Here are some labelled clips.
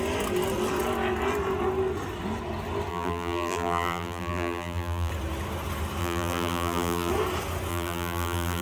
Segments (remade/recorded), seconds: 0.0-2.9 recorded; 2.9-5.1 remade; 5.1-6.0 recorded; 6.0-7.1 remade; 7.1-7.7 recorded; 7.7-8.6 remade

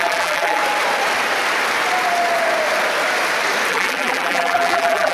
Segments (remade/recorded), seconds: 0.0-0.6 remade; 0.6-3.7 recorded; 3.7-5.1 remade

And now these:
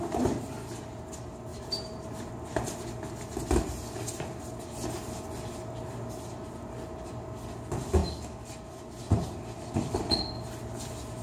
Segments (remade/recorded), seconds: 0.0-1.5 recorded; 1.5-2.3 remade; 2.3-11.2 recorded

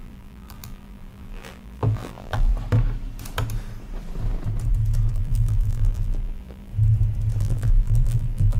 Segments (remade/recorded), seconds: 0.0-2.5 remade; 2.5-5.1 recorded; 5.1-6.7 remade; 6.7-7.4 recorded; 7.4-8.6 remade

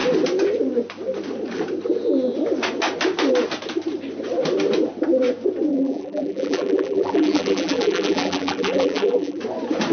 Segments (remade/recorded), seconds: 0.0-5.7 recorded; 5.7-9.4 remade; 9.4-9.9 recorded

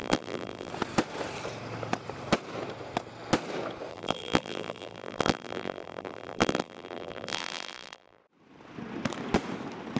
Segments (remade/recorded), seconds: 0.0-0.7 remade; 0.7-3.9 recorded; 3.9-8.2 remade; 8.2-10.0 recorded